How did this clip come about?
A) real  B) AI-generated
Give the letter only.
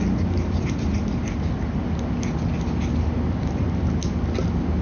A